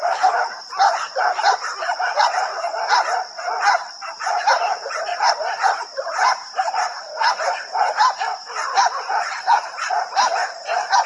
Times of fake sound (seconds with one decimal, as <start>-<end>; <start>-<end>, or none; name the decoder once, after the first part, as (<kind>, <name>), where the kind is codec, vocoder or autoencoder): 0.0-2.5 (vocoder, BigVGAN v2); 4.1-11.1